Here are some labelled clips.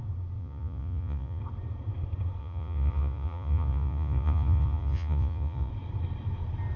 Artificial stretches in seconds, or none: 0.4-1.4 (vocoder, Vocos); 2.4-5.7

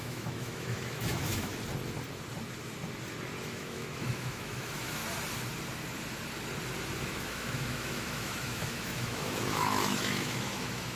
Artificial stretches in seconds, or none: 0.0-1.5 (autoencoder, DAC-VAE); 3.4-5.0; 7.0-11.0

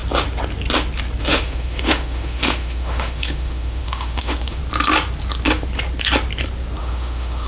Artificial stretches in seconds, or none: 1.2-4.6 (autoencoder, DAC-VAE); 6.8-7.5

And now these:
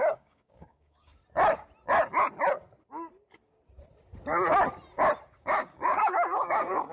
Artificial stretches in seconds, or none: 0.0-1.2 (codec, DAC); 5.3-6.9